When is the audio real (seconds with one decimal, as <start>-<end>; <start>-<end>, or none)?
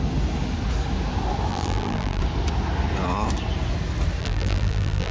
0.0-1.5; 2.2-4.2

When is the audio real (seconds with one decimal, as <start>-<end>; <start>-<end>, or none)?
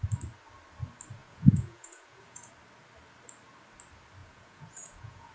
0.0-1.2; 2.5-4.2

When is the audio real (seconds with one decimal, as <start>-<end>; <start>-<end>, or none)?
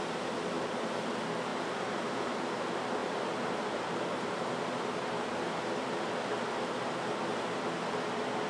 0.0-1.5; 2.3-3.0; 6.1-8.5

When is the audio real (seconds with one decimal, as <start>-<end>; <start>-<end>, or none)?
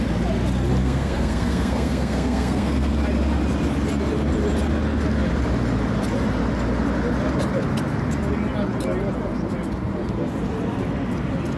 0.0-0.8; 2.9-11.6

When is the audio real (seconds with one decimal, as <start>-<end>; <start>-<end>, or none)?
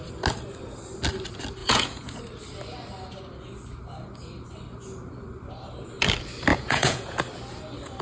0.0-1.6; 2.2-6.5; 7.2-8.0